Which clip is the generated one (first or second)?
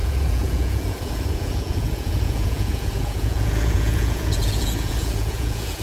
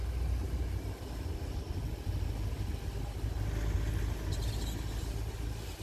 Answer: first